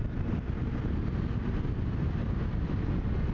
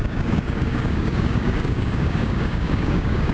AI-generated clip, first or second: second